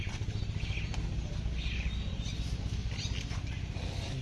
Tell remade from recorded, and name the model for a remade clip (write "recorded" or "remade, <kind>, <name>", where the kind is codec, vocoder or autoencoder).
recorded